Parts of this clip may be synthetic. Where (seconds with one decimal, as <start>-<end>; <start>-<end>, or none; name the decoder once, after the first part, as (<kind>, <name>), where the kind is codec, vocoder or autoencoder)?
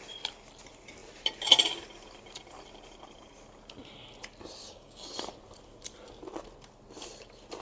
4.6-5.2 (codec, DAC)